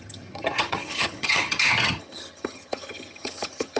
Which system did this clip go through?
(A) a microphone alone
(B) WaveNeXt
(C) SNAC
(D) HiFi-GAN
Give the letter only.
D